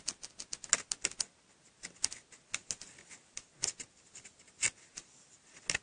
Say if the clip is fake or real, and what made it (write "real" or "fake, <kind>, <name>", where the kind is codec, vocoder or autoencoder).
real